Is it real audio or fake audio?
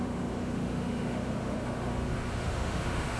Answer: fake